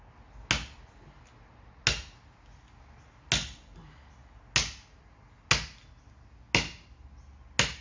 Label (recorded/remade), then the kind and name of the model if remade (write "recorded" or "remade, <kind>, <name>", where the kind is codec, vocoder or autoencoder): recorded